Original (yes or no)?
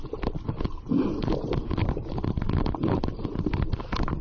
yes